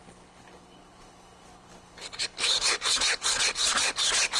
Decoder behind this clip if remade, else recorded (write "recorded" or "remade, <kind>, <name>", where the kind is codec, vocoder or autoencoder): remade, codec, HILCodec